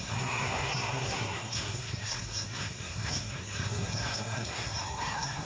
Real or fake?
fake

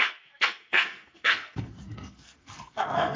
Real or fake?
fake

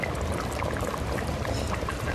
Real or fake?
real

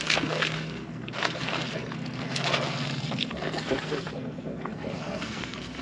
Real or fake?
fake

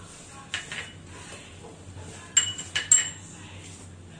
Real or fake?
real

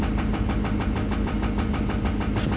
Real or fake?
real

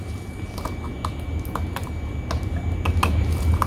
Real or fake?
real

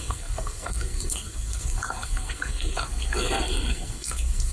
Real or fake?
fake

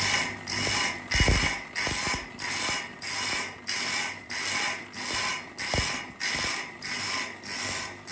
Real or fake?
real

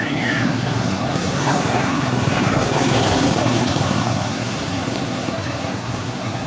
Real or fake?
fake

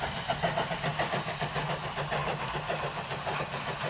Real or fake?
real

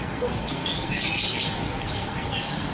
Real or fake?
fake